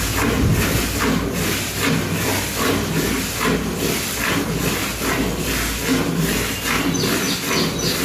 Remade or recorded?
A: recorded